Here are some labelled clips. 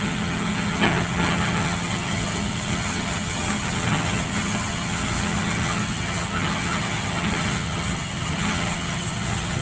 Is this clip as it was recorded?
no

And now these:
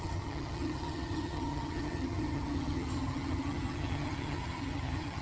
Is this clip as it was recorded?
no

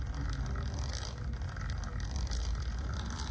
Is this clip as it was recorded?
yes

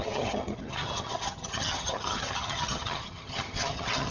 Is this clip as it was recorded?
no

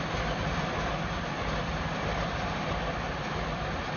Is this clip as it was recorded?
yes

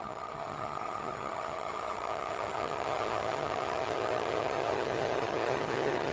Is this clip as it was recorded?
no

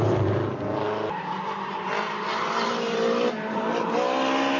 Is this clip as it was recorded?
yes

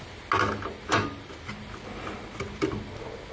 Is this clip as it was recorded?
yes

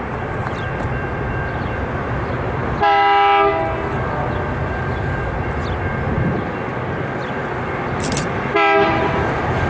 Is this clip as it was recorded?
yes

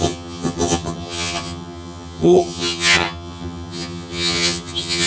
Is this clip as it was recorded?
no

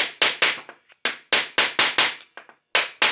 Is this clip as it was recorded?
yes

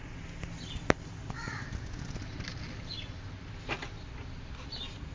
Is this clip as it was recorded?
yes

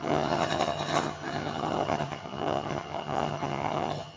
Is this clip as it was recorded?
no